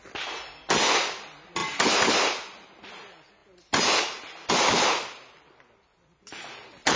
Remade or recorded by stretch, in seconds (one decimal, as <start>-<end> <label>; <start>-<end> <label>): 0.0-7.0 recorded